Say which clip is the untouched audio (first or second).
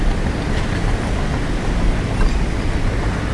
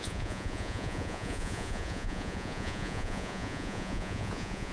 first